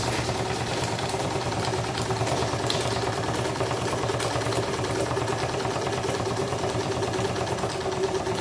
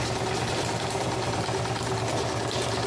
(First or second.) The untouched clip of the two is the second